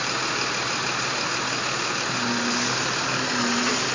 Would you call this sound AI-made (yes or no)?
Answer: no